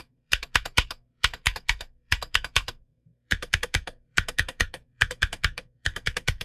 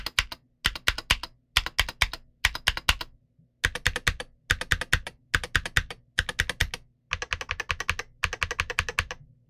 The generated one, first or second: first